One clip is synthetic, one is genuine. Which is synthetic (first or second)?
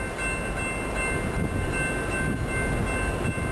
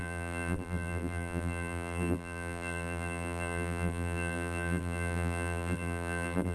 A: second